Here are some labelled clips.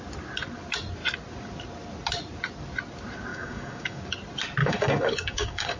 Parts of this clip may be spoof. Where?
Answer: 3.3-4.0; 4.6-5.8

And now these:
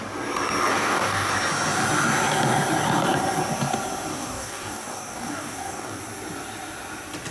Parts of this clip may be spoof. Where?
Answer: 0.7-1.3; 4.1-6.0

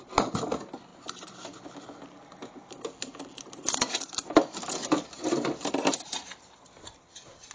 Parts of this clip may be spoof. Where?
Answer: none